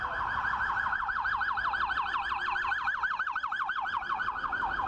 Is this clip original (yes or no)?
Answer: yes